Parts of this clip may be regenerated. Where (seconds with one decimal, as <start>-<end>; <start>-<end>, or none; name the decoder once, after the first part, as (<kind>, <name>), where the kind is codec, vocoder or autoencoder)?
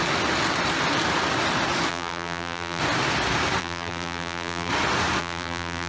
1.9-2.8 (vocoder, BigVGAN v2); 3.6-4.7; 5.2-5.9